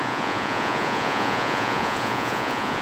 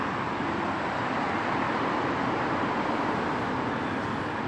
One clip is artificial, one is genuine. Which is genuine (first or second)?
second